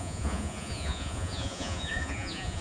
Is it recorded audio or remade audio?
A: remade